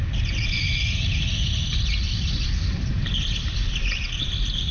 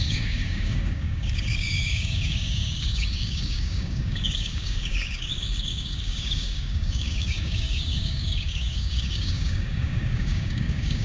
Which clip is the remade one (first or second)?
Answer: second